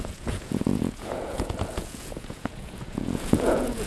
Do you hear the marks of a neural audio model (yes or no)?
yes